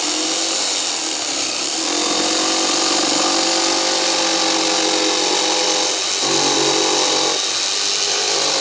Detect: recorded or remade recorded